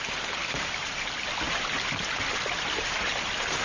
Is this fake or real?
real